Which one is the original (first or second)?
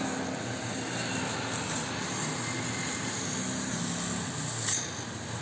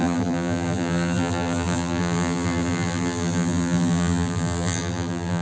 first